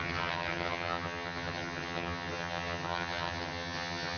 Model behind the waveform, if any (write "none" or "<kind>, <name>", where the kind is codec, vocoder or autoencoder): vocoder, HiFi-GAN